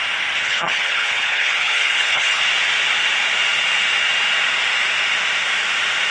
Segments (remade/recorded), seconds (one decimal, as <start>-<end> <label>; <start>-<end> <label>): 0.0-0.4 recorded; 0.4-2.4 remade; 2.4-6.1 recorded